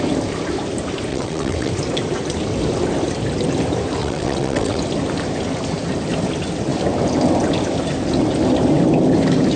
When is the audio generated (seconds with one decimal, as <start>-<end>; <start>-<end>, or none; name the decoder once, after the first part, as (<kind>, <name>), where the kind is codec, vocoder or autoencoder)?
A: 1.1-1.7 (vocoder, WaveNeXt); 4.0-4.8

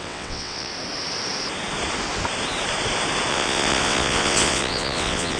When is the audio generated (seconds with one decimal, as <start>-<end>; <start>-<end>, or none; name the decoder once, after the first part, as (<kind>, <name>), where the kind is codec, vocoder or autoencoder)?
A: 0.0-0.7 (vocoder, WaveNeXt); 3.3-5.4